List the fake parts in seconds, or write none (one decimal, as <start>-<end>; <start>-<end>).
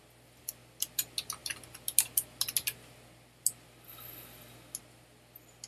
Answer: none